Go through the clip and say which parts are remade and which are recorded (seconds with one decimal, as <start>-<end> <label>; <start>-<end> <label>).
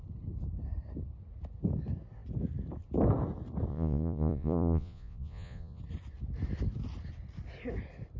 0.0-3.7 recorded; 3.7-5.8 remade; 5.8-8.2 recorded